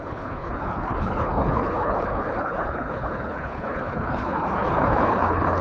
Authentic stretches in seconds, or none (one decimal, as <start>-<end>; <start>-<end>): none